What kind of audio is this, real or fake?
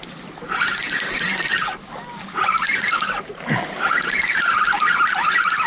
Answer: real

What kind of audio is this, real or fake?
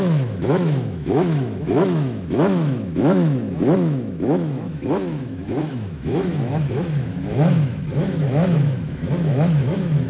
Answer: fake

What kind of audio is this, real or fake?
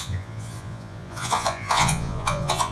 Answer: fake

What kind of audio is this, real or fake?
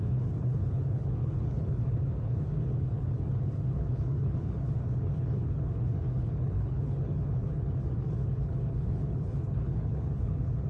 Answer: fake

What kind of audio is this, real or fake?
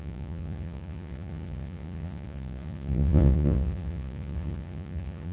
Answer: fake